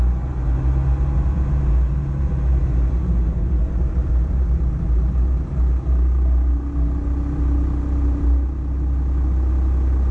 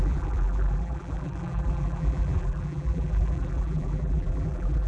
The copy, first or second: second